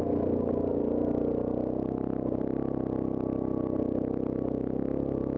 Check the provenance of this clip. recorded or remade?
recorded